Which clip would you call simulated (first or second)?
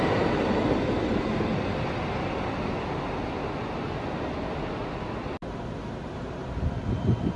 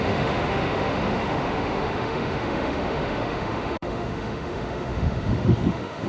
second